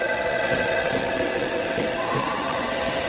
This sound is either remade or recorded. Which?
remade